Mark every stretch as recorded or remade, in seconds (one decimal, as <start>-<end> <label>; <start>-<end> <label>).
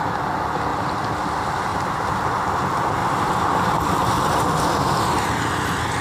0.0-0.7 recorded; 0.7-1.2 remade; 1.2-1.7 recorded; 1.7-2.3 remade; 2.3-3.0 recorded; 3.0-4.7 remade; 4.7-6.0 recorded